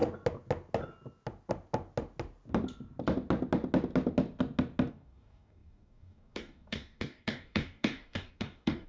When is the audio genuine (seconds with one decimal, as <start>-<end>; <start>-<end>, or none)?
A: 0.0-4.9